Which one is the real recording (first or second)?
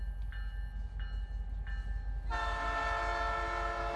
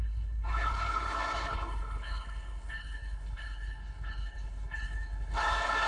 first